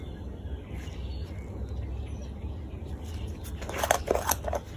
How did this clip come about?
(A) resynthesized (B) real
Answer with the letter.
B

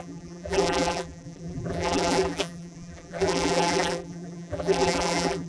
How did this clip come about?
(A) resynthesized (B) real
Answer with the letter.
A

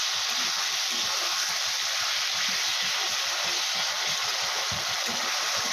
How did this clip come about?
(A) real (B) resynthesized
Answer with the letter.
A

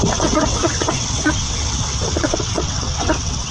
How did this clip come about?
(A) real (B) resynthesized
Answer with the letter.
B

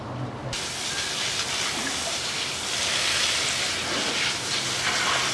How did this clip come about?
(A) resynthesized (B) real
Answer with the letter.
B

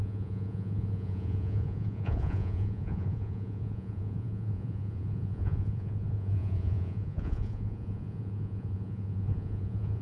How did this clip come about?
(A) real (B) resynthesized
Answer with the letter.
B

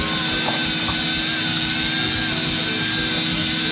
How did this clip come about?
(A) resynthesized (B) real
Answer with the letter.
B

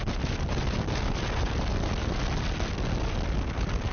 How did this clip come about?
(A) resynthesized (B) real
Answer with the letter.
B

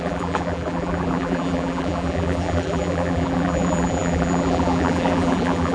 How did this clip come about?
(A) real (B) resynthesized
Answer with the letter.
B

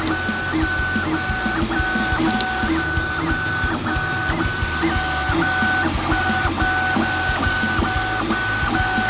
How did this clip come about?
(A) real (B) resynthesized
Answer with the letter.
A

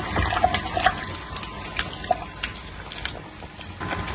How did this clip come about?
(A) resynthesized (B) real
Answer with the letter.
B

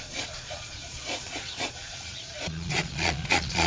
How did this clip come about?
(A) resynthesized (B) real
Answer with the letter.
A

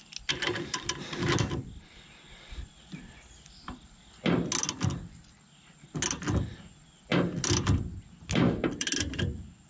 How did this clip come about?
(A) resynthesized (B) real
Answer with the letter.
B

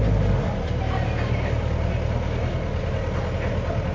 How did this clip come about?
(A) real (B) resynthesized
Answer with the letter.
A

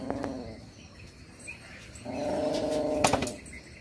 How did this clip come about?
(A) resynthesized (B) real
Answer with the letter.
B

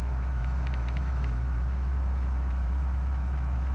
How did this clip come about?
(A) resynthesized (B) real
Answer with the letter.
A